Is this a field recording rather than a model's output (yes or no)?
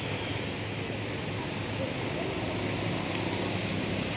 yes